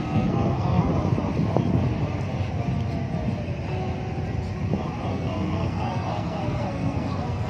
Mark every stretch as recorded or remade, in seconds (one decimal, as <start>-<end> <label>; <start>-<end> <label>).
0.0-0.9 remade; 0.9-5.1 recorded; 5.1-7.5 remade